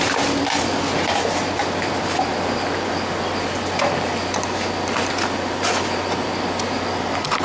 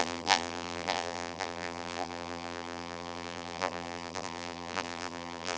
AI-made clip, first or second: second